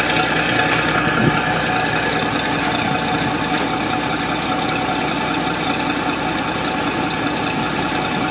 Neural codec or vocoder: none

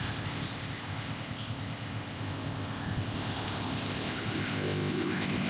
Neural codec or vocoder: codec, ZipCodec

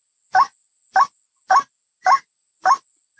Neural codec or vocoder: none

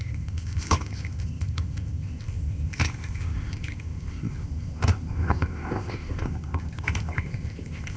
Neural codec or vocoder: codec, ZipCodec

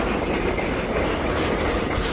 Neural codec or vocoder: none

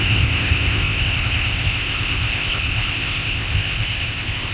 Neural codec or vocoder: codec, ZipCodec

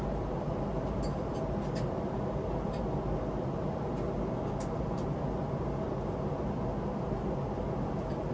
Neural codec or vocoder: none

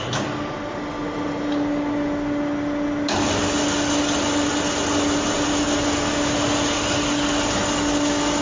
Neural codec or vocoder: none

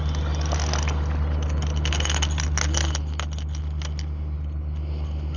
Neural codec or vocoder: none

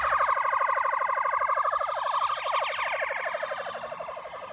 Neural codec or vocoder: none